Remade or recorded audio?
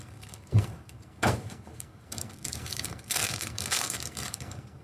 remade